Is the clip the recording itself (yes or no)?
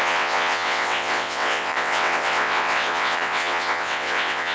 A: no